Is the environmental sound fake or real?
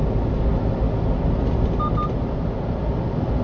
real